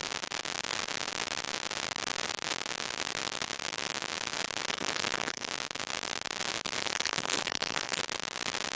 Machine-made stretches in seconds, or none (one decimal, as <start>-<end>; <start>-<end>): 4.7-5.5; 6.8-8.0